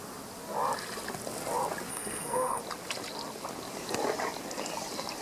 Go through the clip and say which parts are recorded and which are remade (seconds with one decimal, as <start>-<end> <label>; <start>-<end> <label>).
0.0-1.9 recorded; 1.9-2.6 remade; 2.6-5.2 recorded